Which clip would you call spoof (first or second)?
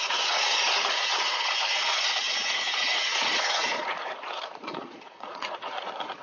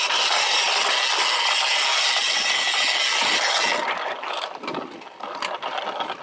first